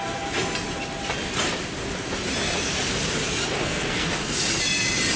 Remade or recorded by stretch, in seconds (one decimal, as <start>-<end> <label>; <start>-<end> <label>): 0.0-3.6 recorded; 3.6-4.4 remade; 4.4-5.2 recorded